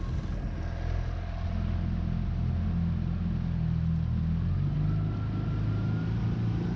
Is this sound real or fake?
real